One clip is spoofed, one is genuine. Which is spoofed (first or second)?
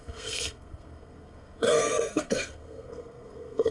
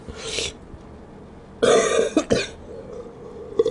first